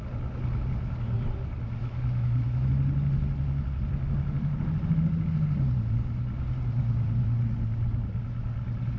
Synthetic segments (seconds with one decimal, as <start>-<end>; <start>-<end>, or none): 1.8-2.7

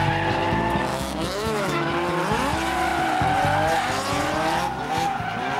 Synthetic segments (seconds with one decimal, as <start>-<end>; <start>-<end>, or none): 0.9-1.9